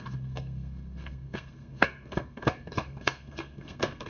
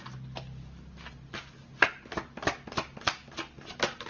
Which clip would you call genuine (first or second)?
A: second